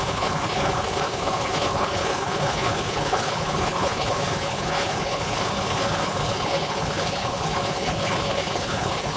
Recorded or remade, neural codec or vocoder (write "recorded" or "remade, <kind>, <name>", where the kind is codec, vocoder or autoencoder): remade, codec, HILCodec